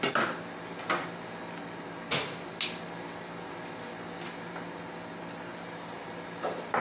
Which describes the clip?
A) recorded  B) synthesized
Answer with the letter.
A